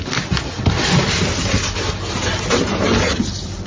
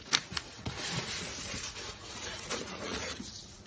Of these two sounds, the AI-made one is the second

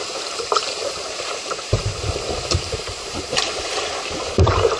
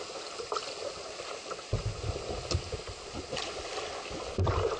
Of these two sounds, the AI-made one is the first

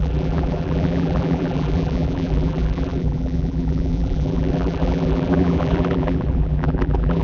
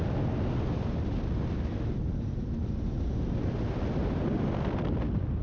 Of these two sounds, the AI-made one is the first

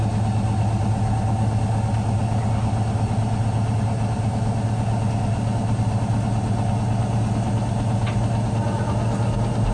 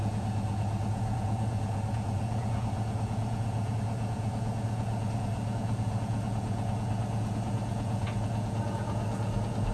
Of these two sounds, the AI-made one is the second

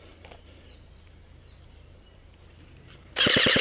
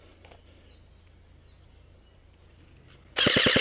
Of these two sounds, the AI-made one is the first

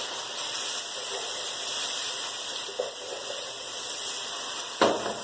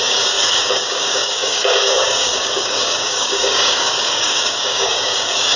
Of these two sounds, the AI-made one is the second